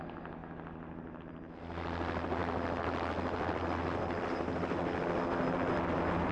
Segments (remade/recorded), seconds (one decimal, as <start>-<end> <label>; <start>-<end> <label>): 0.0-6.3 recorded